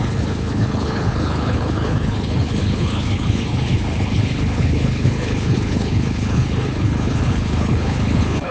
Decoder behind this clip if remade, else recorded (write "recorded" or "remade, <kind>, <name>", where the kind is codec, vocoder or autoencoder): remade, codec, HILCodec